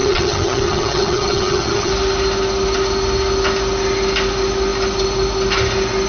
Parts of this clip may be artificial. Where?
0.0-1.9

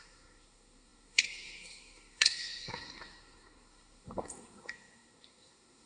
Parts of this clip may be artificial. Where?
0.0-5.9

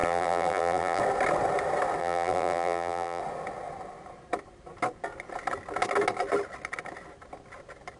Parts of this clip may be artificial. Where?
0.0-1.0; 2.0-3.2